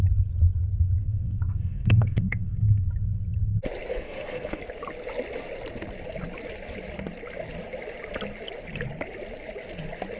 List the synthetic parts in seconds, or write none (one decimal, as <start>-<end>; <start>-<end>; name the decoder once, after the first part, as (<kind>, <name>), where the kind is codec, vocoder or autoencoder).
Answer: 1.0-2.9 (codec, SNAC); 3.9-4.6